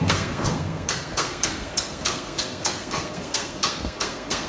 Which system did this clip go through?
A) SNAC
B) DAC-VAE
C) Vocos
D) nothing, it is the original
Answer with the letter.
A